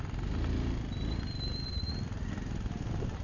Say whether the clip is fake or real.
real